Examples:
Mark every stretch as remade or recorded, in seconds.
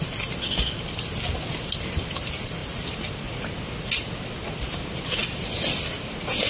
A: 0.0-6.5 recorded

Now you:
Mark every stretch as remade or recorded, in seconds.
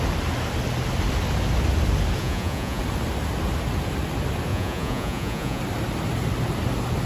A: 0.0-2.2 recorded; 2.2-2.8 remade; 2.8-4.5 recorded; 4.5-5.6 remade; 5.6-7.1 recorded